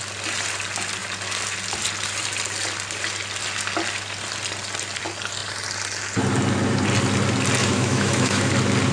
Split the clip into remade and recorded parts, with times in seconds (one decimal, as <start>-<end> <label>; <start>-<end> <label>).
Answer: 0.0-7.6 recorded; 7.6-8.5 remade; 8.5-8.9 recorded